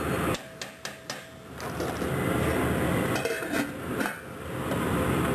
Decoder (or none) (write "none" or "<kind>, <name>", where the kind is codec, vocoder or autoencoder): none